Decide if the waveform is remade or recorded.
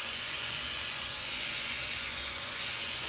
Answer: remade